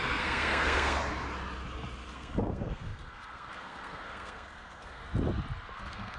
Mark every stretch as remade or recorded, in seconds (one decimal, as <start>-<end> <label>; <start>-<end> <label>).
0.0-1.0 remade; 1.0-2.1 recorded; 2.1-5.0 remade; 5.0-5.7 recorded; 5.7-6.2 remade